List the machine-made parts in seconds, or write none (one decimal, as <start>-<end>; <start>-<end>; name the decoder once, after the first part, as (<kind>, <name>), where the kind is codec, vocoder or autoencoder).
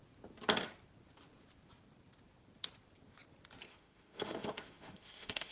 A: 3.7-5.5 (autoencoder, DAC-VAE)